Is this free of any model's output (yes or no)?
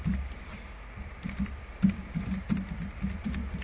no